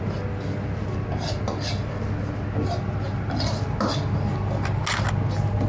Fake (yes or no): no